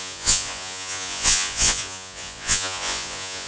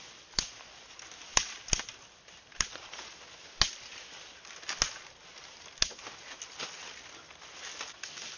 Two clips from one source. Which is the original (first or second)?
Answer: second